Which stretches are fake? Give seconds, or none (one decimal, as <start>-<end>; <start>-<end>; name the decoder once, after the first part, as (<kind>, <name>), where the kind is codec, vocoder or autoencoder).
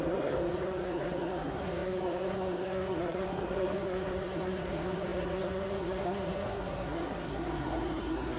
0.0-8.4 (codec, SNAC)